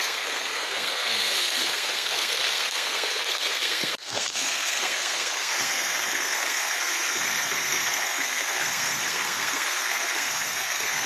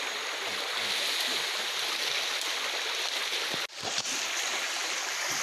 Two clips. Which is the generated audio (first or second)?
first